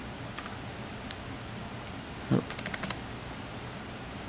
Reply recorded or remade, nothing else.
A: recorded